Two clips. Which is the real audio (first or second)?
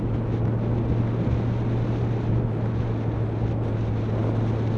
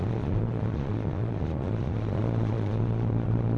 first